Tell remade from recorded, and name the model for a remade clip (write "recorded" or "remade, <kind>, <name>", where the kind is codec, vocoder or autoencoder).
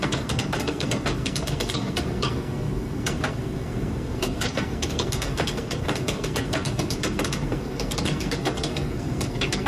remade, codec, SNAC